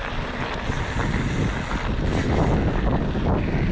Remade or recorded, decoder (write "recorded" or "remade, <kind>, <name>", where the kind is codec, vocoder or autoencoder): recorded